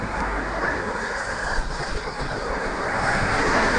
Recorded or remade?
remade